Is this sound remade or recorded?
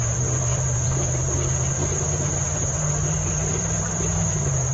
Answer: remade